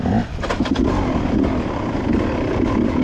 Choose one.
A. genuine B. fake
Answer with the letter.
B